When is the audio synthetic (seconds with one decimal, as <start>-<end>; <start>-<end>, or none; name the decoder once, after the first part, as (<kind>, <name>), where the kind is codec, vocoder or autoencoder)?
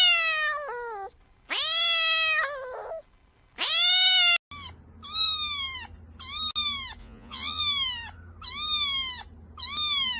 7.0-7.6 (vocoder, Vocos)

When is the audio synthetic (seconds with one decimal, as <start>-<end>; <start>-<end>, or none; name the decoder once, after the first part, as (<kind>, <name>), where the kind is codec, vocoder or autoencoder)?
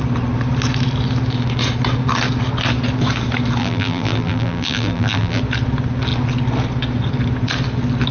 3.6-5.4 (vocoder, BigVGAN v2)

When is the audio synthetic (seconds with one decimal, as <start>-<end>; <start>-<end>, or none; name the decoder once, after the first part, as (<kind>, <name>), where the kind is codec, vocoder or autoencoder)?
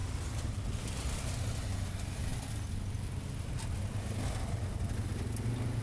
none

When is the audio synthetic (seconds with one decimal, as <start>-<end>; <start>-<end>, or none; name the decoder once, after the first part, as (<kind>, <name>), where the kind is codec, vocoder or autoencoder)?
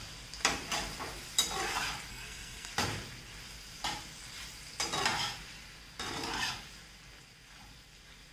2.1-2.7 (codec, SNAC)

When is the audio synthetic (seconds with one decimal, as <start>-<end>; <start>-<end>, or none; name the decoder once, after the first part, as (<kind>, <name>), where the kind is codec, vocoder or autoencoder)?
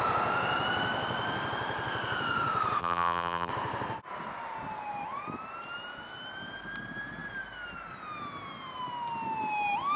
2.8-3.5 (vocoder, BigVGAN v2)